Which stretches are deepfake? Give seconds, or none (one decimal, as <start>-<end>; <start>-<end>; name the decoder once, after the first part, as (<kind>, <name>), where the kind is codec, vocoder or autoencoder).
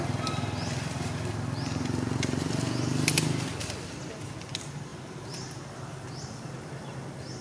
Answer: none